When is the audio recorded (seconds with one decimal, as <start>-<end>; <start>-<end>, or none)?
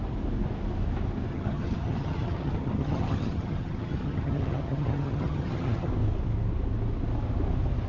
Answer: 0.0-1.3; 5.9-7.9